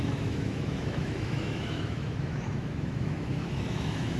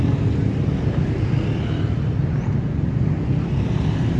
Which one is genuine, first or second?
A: second